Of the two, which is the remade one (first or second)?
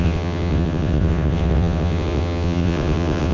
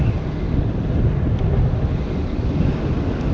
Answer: first